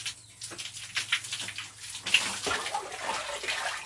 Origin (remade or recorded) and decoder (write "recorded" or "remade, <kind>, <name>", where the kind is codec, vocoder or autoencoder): recorded